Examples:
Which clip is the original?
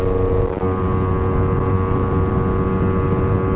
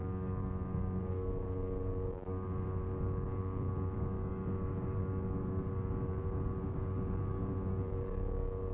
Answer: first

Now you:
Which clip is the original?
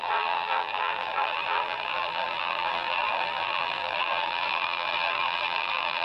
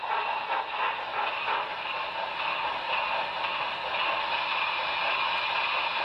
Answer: second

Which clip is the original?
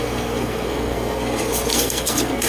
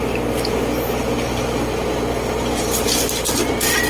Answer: second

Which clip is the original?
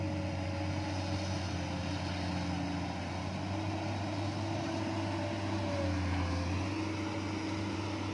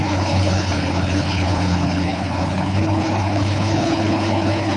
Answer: first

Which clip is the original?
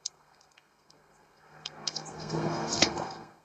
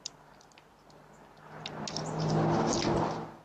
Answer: second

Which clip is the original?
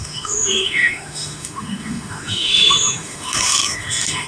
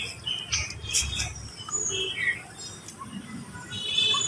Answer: second